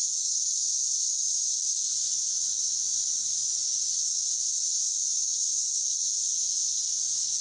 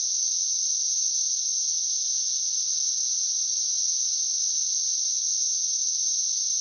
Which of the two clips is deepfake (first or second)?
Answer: first